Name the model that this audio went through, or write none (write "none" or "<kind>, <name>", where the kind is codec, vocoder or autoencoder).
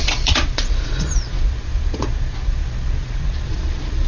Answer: vocoder, Vocos